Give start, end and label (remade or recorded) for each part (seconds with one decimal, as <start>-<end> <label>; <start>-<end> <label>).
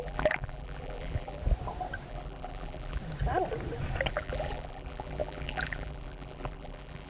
0.0-1.4 remade; 1.4-2.1 recorded; 2.1-3.0 remade; 3.0-4.1 recorded; 4.1-7.1 remade